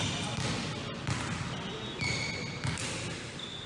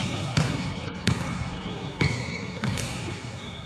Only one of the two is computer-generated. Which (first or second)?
second